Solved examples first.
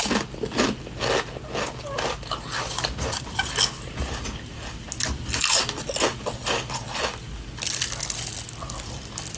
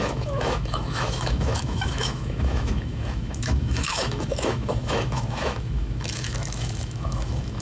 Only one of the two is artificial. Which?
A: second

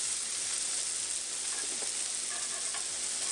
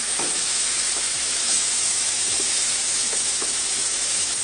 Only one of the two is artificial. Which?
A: second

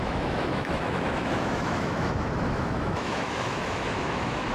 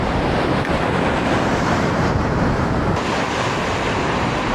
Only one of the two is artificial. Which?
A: first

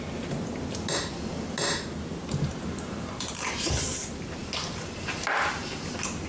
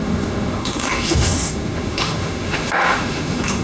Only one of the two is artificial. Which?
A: second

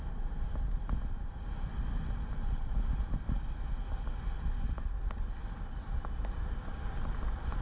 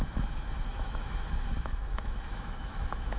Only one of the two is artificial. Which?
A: second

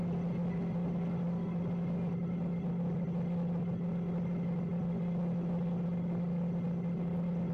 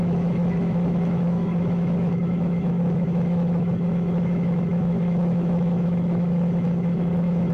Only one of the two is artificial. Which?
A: second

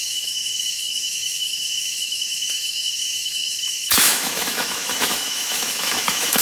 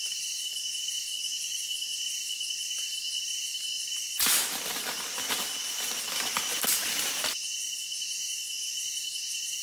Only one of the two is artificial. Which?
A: first